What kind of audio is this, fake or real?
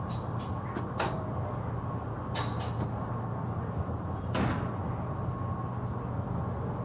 real